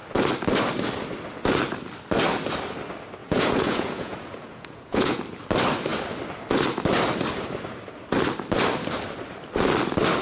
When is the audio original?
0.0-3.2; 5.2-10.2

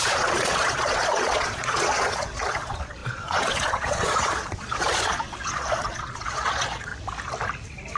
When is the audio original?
6.9-8.0

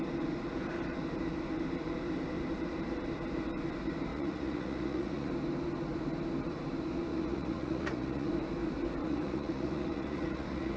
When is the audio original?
0.0-4.1; 5.3-7.1; 8.3-9.0